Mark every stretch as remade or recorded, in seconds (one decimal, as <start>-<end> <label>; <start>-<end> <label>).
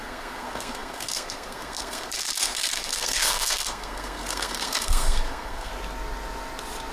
0.0-5.7 remade; 5.7-6.9 recorded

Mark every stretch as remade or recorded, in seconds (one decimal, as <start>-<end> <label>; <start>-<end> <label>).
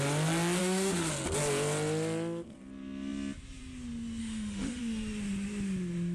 0.0-0.6 recorded; 0.6-1.1 remade; 1.1-4.2 recorded; 4.2-4.8 remade; 4.8-6.1 recorded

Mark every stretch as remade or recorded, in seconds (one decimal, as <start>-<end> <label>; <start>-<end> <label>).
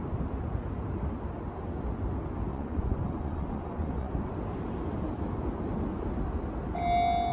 0.0-2.5 recorded; 2.5-4.3 remade; 4.3-7.3 recorded